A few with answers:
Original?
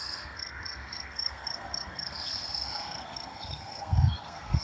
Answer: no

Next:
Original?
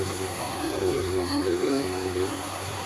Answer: no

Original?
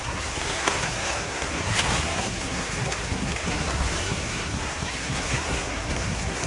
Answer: no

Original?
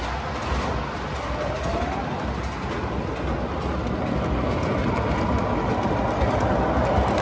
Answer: yes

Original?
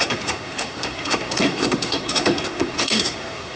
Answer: no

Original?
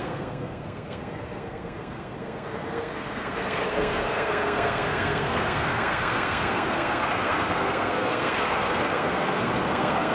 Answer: no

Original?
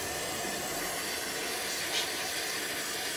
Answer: yes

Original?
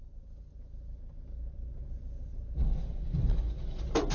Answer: yes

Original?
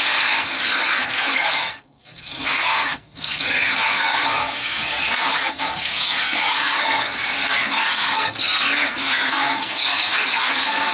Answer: no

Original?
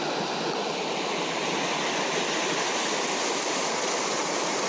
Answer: yes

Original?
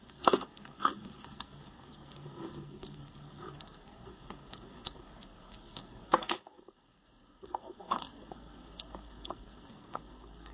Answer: no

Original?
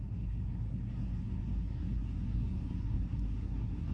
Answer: no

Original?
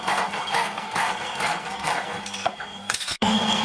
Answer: no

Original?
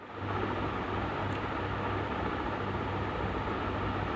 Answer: yes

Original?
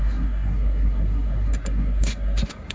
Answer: no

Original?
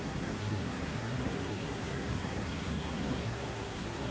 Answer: no